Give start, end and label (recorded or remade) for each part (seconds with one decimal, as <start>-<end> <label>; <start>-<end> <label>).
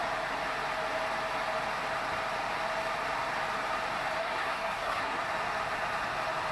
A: 0.0-4.2 recorded; 4.2-5.2 remade; 5.2-6.5 recorded